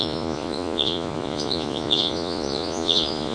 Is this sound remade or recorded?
remade